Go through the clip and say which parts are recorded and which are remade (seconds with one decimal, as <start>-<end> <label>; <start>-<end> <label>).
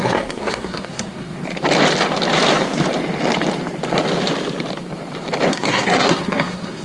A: 0.0-1.4 remade; 1.4-5.5 recorded; 5.5-6.8 remade